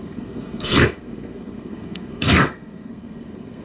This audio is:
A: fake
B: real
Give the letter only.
A